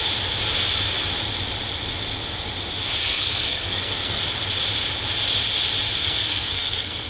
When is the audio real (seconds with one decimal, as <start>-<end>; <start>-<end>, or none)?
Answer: 0.0-3.0; 4.2-6.0